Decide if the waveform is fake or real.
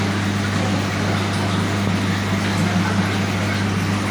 real